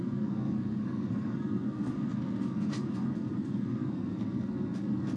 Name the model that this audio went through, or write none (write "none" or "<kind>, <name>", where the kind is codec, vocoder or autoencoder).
codec, SNAC